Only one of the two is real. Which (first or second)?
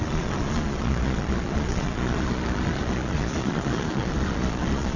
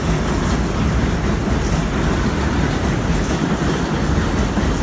second